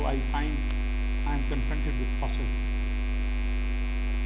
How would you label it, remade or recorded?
recorded